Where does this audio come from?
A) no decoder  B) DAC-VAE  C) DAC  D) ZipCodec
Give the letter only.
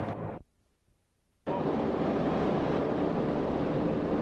A